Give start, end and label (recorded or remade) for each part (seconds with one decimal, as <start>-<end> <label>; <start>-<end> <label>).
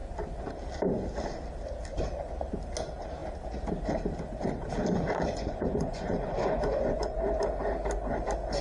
0.0-5.3 recorded; 5.3-7.4 remade; 7.4-8.6 recorded